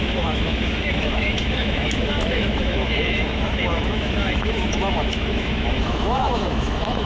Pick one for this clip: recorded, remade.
remade